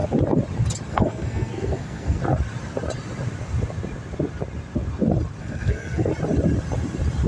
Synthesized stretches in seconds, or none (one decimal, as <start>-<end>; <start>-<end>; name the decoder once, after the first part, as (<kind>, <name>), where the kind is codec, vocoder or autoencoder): 0.9-2.2 (codec, SNAC); 5.4-6.1